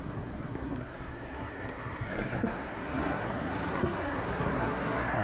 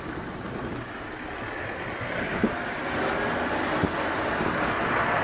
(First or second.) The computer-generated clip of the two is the first